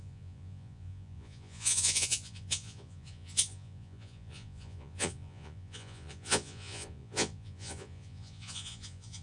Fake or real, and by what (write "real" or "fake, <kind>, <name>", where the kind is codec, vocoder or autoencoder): fake, vocoder, Vocos